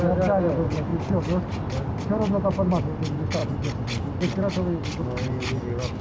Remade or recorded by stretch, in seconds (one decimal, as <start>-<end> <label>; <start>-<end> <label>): 0.0-6.0 recorded